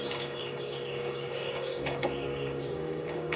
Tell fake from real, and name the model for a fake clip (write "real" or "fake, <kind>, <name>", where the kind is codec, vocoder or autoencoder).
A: fake, codec, DAC